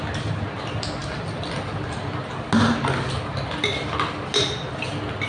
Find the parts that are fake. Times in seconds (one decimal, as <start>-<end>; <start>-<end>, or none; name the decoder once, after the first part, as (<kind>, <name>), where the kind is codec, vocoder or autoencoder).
none